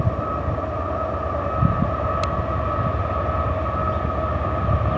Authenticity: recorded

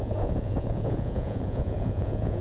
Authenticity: remade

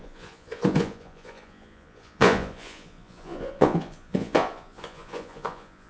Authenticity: remade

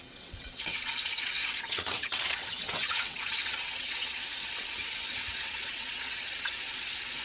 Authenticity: remade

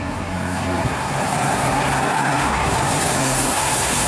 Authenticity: remade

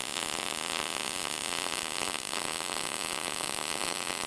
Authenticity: recorded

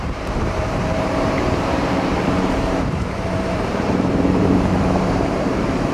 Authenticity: remade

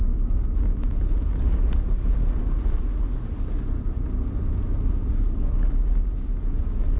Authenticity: recorded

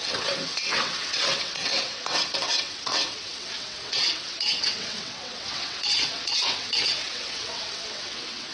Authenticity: remade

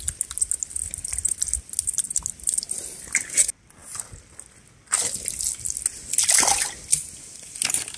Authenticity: recorded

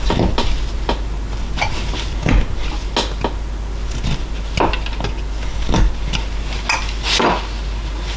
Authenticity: recorded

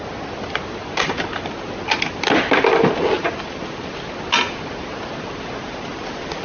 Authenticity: recorded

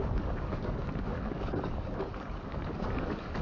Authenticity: remade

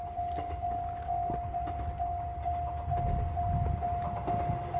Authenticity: recorded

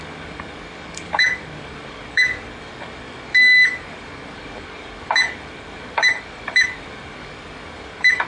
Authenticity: remade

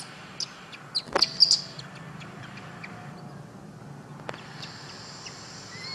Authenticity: recorded